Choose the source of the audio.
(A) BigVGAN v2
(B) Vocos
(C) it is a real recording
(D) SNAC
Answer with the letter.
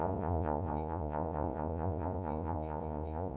B